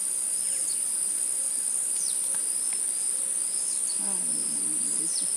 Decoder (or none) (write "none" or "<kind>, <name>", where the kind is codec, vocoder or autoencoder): none